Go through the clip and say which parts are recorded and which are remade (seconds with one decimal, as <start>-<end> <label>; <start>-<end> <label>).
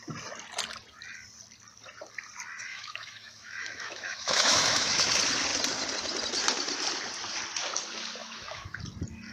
0.0-2.7 recorded; 2.7-5.1 remade; 5.1-8.2 recorded; 8.2-8.8 remade; 8.8-9.3 recorded